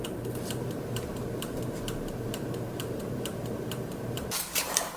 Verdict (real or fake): fake